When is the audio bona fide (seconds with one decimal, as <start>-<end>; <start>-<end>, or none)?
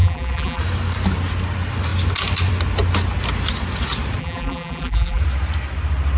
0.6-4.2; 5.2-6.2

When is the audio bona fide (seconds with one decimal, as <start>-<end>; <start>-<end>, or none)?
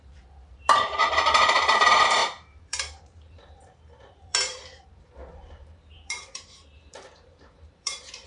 none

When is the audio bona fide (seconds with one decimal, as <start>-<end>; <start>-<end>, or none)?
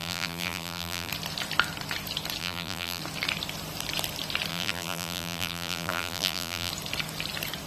1.1-2.4; 3.0-4.5; 6.7-7.7